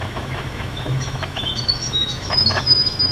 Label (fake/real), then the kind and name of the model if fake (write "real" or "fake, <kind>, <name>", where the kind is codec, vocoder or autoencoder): fake, autoencoder, DAC-VAE